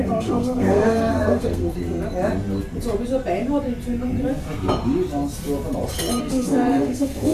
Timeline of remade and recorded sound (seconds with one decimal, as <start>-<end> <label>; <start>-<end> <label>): 0.0-1.8 remade; 1.8-6.2 recorded; 6.2-7.3 remade